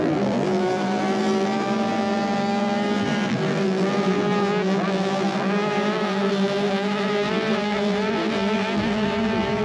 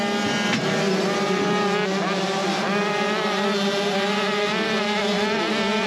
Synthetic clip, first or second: first